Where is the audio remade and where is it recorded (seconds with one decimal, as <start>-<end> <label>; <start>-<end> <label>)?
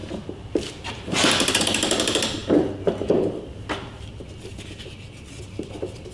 0.0-6.1 recorded